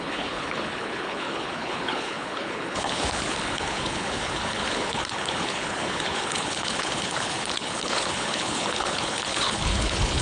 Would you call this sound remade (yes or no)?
yes